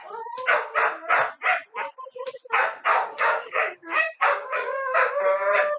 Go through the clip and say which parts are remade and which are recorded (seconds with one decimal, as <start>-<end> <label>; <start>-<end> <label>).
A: 0.0-2.9 recorded; 2.9-5.1 remade; 5.1-5.8 recorded